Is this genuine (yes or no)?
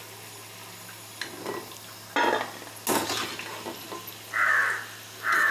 yes